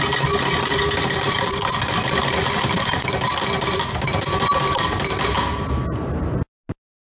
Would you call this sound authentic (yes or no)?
yes